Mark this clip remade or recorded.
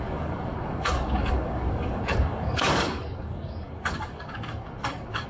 remade